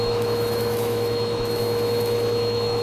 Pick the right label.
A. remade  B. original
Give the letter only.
A